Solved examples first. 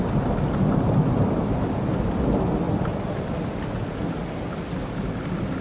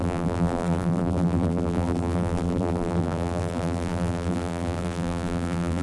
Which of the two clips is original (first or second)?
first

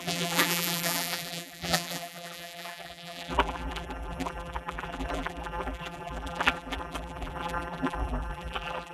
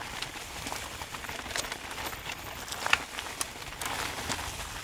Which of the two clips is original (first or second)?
second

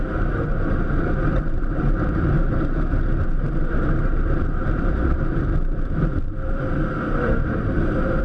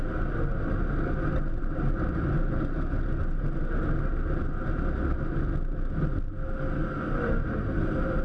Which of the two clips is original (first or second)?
second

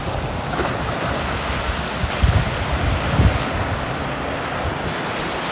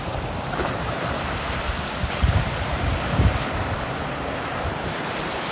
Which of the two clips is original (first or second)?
first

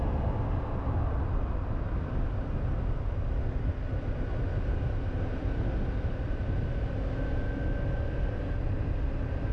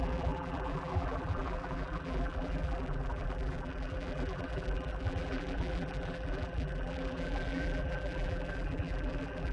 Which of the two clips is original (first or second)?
first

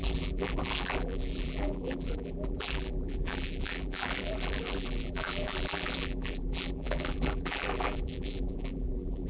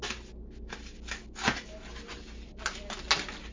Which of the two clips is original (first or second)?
second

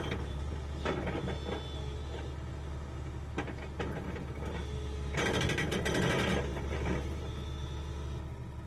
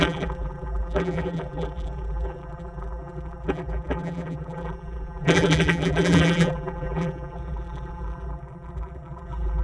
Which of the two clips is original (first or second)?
first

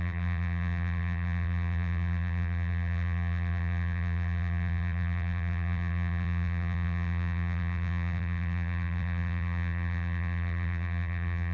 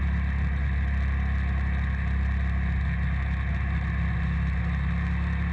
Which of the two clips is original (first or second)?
second